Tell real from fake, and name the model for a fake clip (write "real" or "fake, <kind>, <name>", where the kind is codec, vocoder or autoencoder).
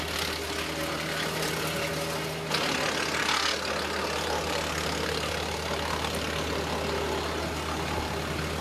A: real